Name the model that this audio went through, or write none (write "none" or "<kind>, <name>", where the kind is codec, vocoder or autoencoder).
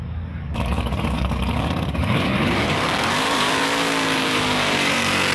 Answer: codec, DAC